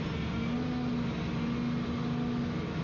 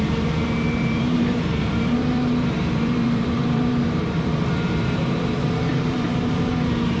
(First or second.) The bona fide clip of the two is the first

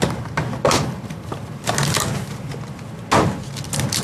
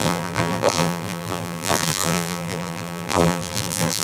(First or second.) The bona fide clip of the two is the first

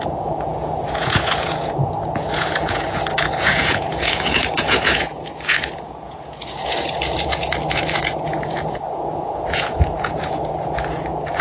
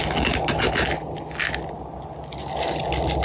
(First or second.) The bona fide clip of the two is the second